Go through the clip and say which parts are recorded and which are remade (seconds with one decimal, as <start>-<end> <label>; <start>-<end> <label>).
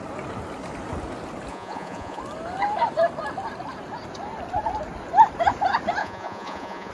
0.0-1.5 recorded; 1.5-2.2 remade; 2.2-6.0 recorded; 6.0-6.9 remade